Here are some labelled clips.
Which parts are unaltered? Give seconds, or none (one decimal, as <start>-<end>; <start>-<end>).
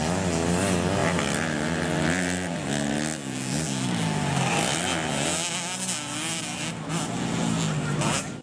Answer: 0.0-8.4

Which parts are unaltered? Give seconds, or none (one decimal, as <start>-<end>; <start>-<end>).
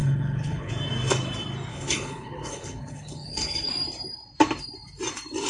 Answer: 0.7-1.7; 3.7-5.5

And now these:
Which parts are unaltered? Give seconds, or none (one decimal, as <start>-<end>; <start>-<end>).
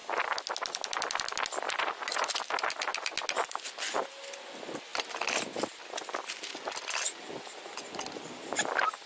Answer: 0.0-9.1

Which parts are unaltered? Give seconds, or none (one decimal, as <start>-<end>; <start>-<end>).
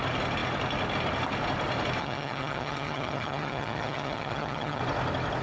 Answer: 0.0-2.0; 4.8-5.4